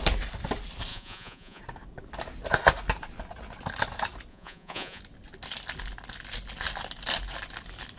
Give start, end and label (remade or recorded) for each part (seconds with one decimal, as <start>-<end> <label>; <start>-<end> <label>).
0.0-0.9 recorded; 0.9-1.6 remade; 1.6-4.3 recorded; 4.3-5.0 remade; 5.0-8.0 recorded